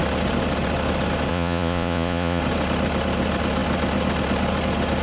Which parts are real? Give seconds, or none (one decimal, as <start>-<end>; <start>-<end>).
0.0-1.3; 2.4-5.0